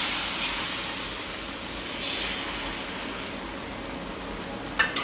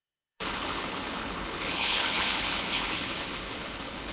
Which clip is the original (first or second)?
first